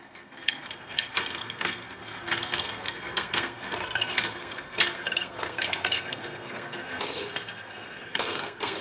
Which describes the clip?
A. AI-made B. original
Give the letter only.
A